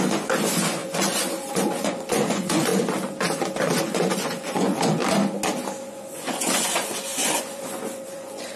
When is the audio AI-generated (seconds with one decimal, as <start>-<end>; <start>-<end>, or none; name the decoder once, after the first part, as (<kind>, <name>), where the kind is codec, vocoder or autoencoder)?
0.0-2.7 (vocoder, Vocos); 3.8-5.0; 5.8-8.6